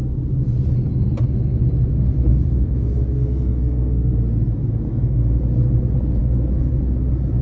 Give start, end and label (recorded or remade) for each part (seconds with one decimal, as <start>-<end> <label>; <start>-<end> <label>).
0.0-2.3 recorded; 2.3-4.1 remade; 4.1-4.9 recorded; 4.9-5.4 remade; 5.4-7.4 recorded